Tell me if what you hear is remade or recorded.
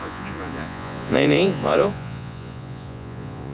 remade